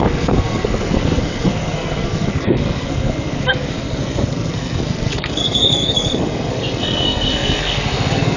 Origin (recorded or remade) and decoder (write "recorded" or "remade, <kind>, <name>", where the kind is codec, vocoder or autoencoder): remade, codec, SNAC